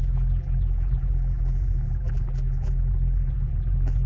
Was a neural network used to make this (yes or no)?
yes